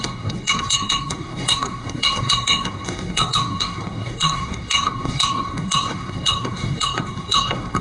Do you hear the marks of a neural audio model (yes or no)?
yes